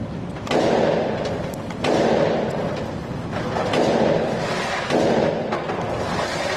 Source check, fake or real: real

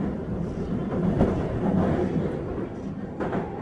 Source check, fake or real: real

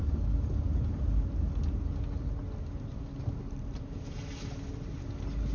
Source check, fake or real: real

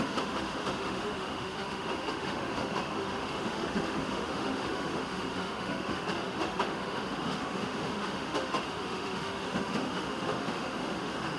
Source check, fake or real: fake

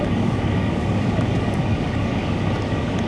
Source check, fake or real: fake